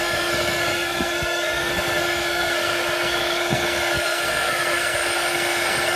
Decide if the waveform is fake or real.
fake